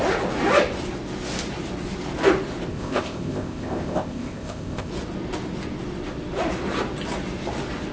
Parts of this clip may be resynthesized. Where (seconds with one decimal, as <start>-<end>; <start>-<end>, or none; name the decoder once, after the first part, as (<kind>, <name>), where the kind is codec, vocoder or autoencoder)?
2.7-4.9 (codec, ZipCodec)